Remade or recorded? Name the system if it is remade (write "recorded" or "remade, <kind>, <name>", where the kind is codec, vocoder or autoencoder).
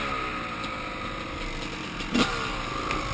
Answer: recorded